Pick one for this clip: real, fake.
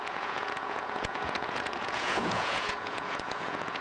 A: fake